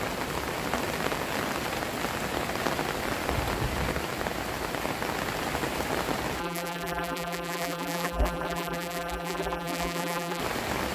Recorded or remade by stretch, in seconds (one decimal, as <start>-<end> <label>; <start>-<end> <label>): 0.0-6.4 recorded; 6.4-10.4 remade; 10.4-10.9 recorded